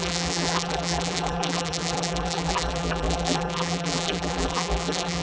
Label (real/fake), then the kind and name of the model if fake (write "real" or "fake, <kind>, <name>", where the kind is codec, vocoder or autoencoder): fake, vocoder, BigVGAN v2